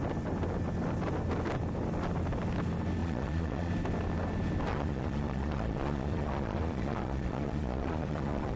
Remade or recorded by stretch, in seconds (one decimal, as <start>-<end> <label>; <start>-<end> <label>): 0.0-3.0 recorded; 3.0-3.7 remade; 3.7-4.7 recorded; 4.7-8.6 remade